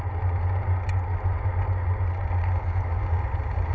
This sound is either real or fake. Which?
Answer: real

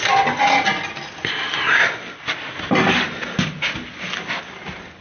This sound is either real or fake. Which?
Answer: real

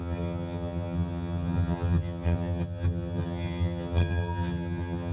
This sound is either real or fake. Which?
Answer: fake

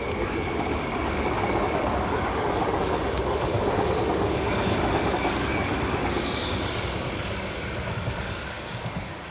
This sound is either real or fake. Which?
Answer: fake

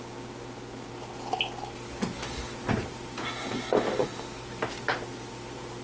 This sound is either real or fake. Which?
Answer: real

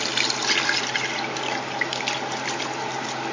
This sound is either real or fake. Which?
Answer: real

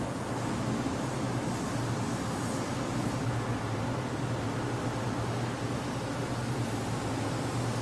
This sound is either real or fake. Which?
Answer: real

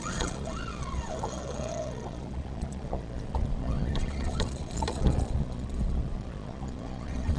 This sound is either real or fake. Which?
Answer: fake